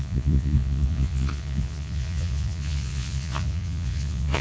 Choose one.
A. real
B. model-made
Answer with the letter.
B